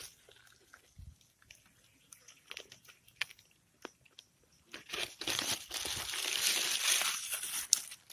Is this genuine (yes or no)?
yes